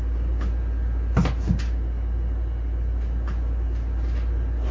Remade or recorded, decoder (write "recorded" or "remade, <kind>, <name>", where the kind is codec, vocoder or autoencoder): recorded